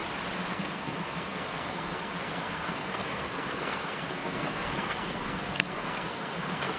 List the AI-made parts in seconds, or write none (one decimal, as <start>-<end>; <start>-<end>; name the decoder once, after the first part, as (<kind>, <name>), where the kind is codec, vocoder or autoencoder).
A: 0.5-6.8 (codec, SNAC)